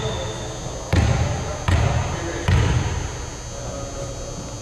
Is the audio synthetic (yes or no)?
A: no